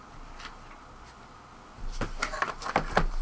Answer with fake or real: real